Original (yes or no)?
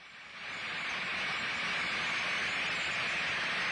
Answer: yes